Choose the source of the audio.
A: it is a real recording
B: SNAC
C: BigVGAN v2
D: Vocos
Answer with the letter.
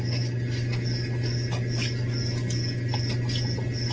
A